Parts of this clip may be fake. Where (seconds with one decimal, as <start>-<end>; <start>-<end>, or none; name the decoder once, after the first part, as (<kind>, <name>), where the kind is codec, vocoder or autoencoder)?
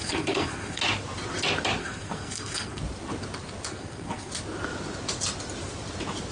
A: 0.0-0.8 (codec, SNAC); 1.8-2.8; 3.7-4.3